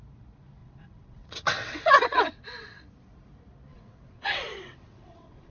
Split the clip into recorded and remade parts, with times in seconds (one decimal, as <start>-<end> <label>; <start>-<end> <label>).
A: 0.0-0.6 recorded; 0.6-2.8 remade; 2.8-3.7 recorded; 3.7-5.5 remade